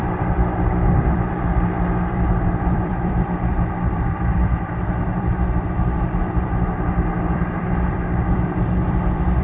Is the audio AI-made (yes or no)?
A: yes